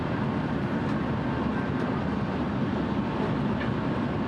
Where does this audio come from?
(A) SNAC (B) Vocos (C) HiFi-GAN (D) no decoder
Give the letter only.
D